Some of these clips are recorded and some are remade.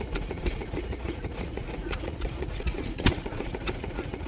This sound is remade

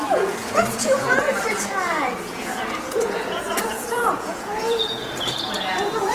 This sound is remade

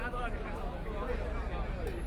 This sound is recorded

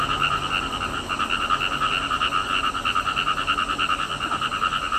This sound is recorded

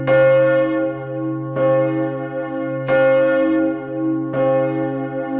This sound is recorded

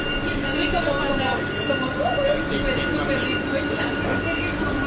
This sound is recorded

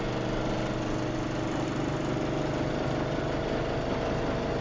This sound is recorded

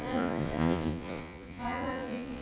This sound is remade